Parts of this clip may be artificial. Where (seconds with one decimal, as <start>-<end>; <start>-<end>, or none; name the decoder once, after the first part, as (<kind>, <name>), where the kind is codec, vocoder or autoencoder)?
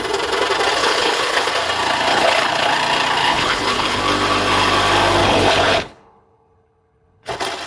0.8-1.5 (codec, HILCodec); 2.1-2.7; 3.2-4.0; 5.2-7.3